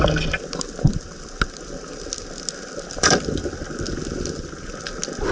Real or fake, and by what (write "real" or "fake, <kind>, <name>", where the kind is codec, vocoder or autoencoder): real